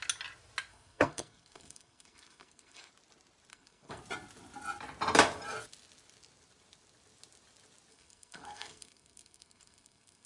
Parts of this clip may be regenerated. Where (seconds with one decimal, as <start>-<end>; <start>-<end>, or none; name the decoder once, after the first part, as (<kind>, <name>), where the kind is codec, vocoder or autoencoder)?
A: 0.7-2.9 (codec, SNAC); 3.5-4.0; 7.9-10.3

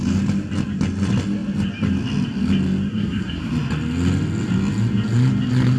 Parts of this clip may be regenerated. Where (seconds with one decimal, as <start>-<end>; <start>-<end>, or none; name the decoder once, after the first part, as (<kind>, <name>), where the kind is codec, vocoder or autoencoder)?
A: 2.9-3.5 (codec, SNAC)

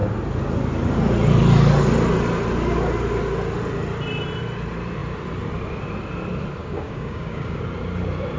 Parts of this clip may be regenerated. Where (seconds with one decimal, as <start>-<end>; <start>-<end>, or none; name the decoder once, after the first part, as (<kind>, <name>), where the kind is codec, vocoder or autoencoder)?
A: 6.6-7.6 (codec, DAC)